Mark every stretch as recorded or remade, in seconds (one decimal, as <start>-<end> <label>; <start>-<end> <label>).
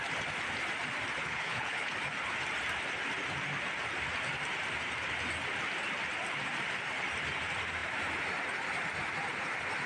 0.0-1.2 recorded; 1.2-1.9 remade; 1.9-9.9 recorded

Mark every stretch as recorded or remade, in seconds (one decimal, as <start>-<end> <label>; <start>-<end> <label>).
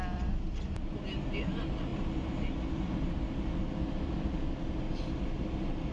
0.0-5.9 recorded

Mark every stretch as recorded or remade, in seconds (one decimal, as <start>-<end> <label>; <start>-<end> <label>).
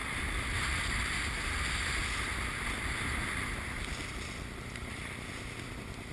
0.0-1.1 remade; 1.1-6.1 recorded